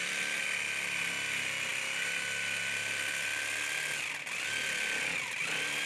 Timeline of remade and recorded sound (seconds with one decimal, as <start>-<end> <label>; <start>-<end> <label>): 0.0-5.9 recorded